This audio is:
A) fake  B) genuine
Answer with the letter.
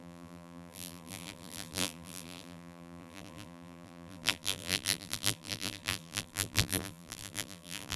A